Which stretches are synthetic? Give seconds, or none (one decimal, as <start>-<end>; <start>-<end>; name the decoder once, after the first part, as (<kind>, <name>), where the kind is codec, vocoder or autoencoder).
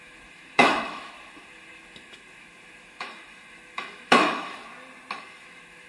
0.0-4.6 (autoencoder, DAC-VAE); 5.2-5.9